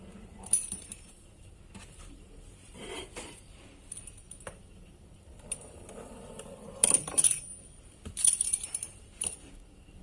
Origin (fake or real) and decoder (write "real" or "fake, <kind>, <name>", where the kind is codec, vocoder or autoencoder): fake, vocoder, BigVGAN v2